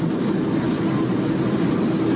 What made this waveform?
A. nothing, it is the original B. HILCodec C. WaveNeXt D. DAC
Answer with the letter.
A